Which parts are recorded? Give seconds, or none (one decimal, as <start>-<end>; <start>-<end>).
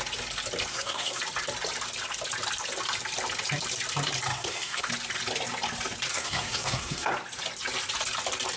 0.0-0.7; 1.2-4.3; 4.9-6.1; 7.1-8.6